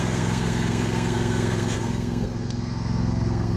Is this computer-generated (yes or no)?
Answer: yes